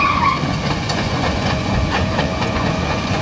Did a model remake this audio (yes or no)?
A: yes